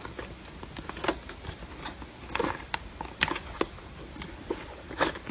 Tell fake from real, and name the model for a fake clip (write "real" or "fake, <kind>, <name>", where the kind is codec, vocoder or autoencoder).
real